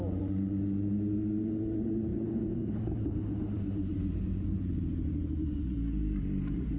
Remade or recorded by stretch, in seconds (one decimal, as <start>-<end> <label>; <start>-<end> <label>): 0.0-2.1 recorded; 2.1-4.9 remade; 4.9-6.0 recorded; 6.0-6.8 remade